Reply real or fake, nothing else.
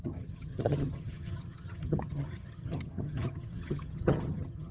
fake